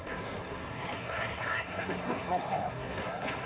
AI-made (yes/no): yes